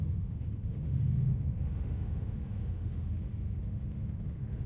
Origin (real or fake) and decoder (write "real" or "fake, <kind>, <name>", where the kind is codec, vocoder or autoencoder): fake, autoencoder, DAC-VAE